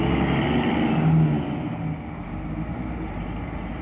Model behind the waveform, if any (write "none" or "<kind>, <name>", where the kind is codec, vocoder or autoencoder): none